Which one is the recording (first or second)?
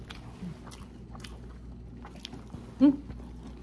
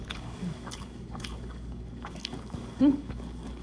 first